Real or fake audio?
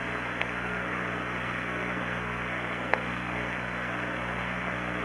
fake